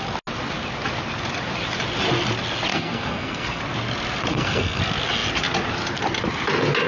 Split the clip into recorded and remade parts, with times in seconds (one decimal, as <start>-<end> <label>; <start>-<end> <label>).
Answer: 0.0-2.7 recorded; 2.7-3.6 remade; 3.6-4.3 recorded; 4.3-4.8 remade; 4.8-6.9 recorded